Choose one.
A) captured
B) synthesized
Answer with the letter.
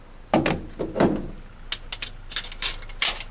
A